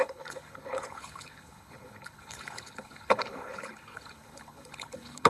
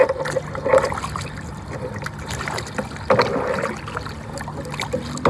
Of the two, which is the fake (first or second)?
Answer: first